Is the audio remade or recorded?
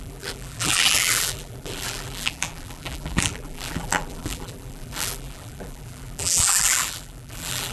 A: remade